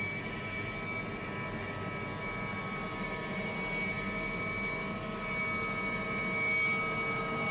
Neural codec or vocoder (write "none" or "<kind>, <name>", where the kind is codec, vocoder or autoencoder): none